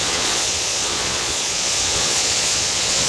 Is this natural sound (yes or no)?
no